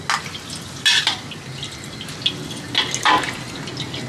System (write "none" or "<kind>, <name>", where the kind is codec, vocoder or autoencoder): none